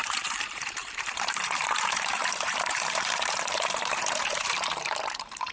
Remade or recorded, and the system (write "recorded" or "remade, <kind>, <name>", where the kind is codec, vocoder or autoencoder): remade, vocoder, BigVGAN v2